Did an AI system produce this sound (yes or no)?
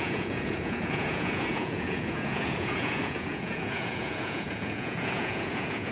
yes